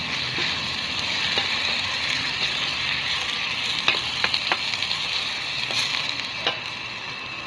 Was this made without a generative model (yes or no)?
yes